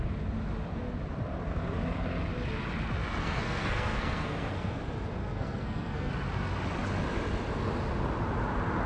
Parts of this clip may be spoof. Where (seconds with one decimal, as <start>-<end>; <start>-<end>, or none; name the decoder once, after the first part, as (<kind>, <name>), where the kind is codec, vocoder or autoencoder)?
3.2-4.8 (codec, SNAC); 5.2-6.1